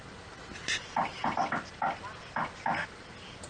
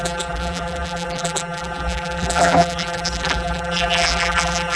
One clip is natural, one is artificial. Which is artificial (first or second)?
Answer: second